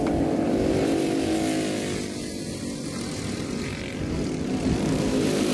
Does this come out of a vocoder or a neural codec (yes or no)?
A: no